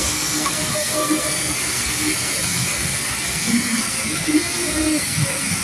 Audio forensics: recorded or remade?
remade